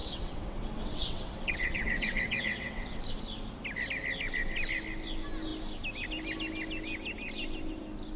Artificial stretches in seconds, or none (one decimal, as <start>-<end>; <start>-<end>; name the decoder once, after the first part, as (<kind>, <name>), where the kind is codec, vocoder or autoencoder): 0.0-3.0 (vocoder, WaveNeXt)